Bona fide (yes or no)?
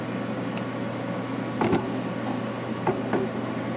yes